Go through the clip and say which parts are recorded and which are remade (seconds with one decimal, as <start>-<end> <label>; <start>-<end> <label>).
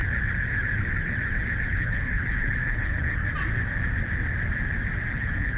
0.0-1.7 recorded; 1.7-3.2 remade; 3.2-5.1 recorded; 5.1-5.6 remade